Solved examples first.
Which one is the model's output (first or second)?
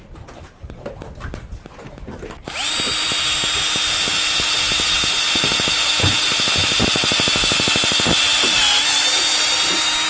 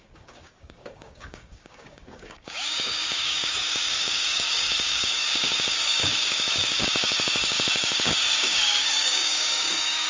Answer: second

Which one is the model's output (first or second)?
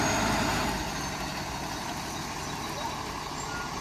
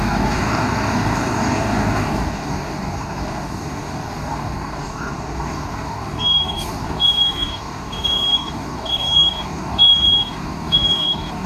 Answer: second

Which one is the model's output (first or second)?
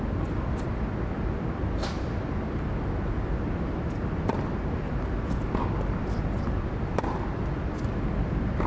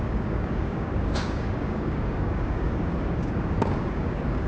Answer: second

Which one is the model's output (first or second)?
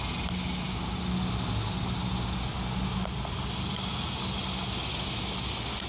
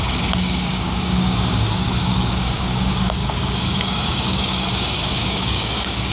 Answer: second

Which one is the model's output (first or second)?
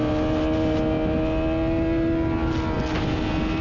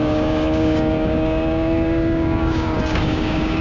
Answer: second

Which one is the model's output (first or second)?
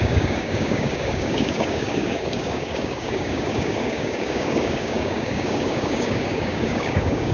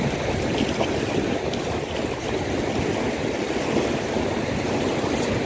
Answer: first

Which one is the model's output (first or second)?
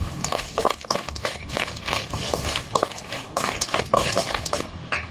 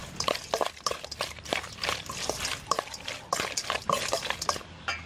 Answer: first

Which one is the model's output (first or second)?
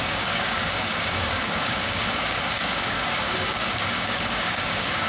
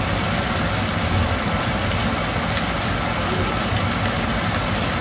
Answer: first